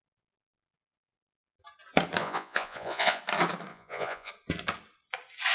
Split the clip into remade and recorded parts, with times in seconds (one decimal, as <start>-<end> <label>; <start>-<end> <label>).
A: 0.0-2.2 recorded; 2.2-3.2 remade; 3.2-3.7 recorded; 3.7-4.3 remade; 4.3-5.5 recorded